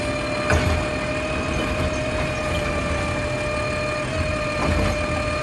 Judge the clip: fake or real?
real